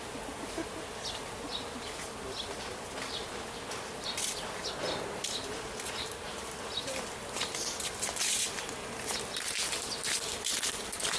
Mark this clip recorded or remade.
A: recorded